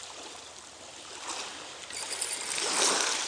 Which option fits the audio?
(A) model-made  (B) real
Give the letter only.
B